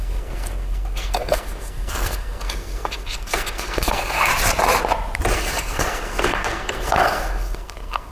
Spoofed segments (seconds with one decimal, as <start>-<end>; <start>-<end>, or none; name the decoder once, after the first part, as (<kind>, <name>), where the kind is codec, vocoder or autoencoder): 0.0-4.3 (codec, SNAC); 5.3-8.1